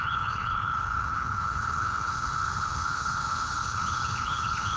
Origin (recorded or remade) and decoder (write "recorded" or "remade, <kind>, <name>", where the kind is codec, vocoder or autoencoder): remade, codec, HILCodec